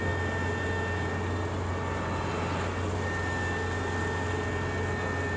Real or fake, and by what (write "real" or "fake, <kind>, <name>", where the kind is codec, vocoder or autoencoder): real